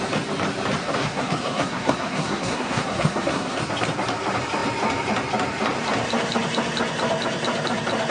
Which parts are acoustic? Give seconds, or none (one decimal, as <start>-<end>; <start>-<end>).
0.0-0.8; 3.6-8.1